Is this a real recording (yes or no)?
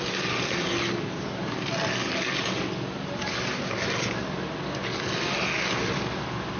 yes